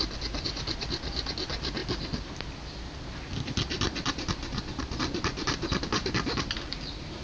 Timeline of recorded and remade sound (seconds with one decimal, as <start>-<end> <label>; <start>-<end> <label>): 0.0-7.2 recorded